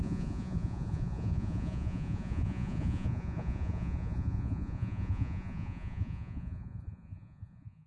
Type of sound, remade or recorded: remade